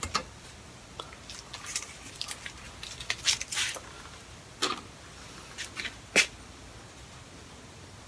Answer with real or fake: real